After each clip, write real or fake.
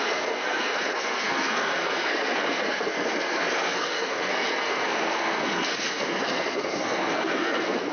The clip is fake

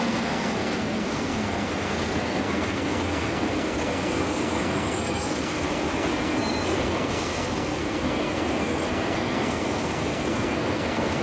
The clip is fake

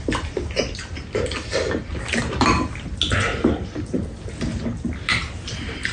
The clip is real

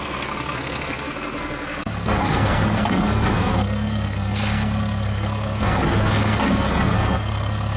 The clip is fake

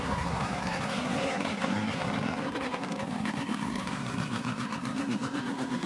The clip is fake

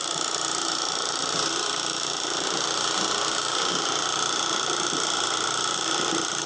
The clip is real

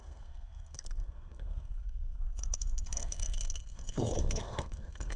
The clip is fake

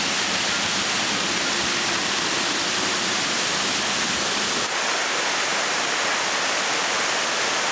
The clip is real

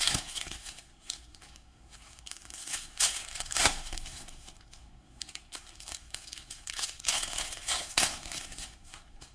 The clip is fake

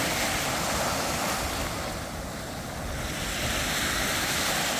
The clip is real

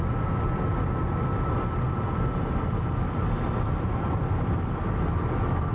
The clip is real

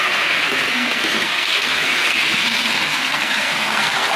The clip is fake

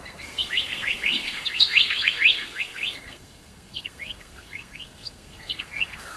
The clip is fake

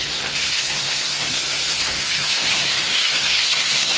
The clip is fake